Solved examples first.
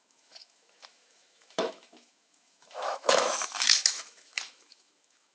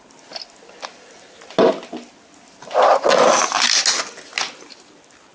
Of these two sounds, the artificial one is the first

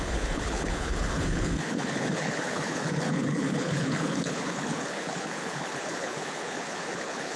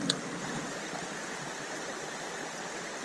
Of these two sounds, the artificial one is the first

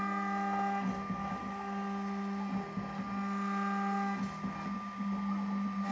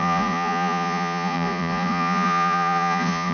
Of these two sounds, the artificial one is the second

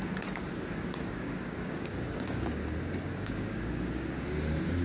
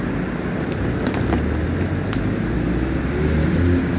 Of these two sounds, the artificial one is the first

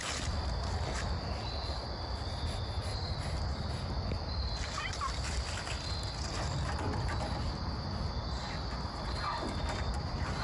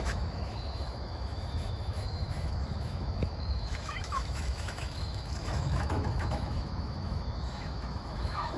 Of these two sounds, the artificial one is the second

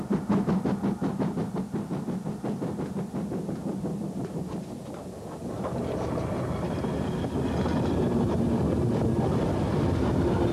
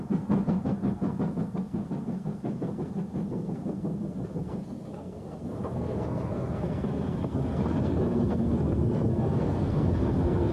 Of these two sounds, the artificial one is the second